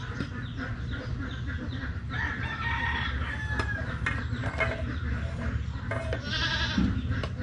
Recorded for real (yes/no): yes